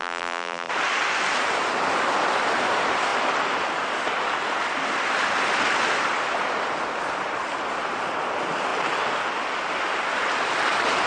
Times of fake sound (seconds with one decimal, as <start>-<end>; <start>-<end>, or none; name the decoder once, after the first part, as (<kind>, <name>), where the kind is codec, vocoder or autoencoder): 0.0-0.7 (vocoder, BigVGAN v2)